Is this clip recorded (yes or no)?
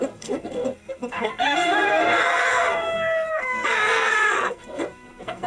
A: no